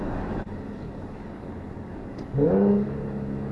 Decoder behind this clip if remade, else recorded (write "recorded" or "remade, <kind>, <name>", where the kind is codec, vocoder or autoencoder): remade, codec, DAC